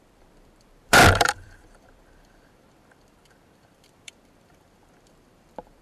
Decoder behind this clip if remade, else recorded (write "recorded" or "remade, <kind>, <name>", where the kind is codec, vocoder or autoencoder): remade, vocoder, BigVGAN v2